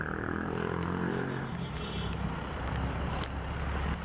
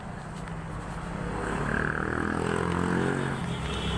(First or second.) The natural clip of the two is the second